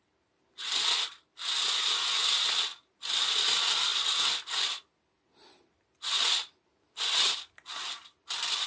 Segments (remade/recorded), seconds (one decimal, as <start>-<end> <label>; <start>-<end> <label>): 0.0-8.7 recorded